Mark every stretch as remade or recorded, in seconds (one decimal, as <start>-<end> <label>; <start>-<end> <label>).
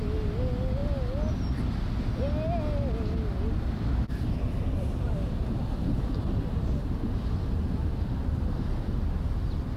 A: 0.0-9.8 recorded